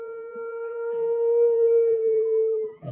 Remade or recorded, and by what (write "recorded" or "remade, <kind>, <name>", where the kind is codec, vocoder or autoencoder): remade, vocoder, BigVGAN v2